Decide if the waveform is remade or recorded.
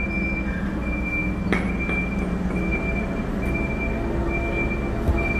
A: recorded